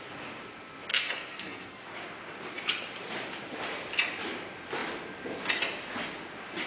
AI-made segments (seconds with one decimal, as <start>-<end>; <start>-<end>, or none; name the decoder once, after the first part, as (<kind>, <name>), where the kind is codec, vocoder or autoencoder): 0.9-1.8 (codec, SNAC)